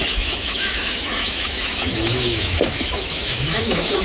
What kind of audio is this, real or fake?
fake